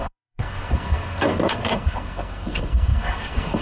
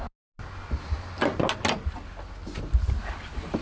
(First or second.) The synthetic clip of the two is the first